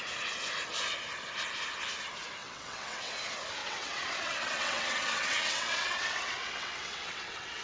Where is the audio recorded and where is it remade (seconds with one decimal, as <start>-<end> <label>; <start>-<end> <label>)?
0.0-2.4 recorded; 2.4-3.1 remade; 3.1-3.6 recorded; 3.6-7.6 remade

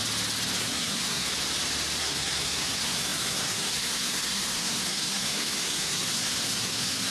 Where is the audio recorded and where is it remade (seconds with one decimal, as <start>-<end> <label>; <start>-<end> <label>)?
0.0-0.6 recorded; 0.6-1.3 remade; 1.3-2.0 recorded; 2.0-7.1 remade

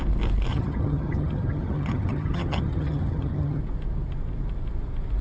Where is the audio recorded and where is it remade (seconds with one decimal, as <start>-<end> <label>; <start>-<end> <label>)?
0.0-0.5 recorded; 0.5-3.6 remade; 3.6-5.2 recorded

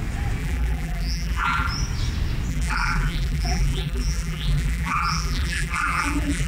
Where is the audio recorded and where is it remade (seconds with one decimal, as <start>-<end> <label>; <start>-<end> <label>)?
0.0-0.4 recorded; 0.4-1.7 remade; 1.7-2.5 recorded; 2.5-6.5 remade

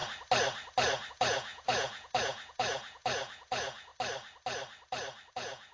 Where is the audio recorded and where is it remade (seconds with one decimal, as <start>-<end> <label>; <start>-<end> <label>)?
0.0-1.1 recorded; 1.1-3.9 remade; 3.9-5.3 recorded; 5.3-5.7 remade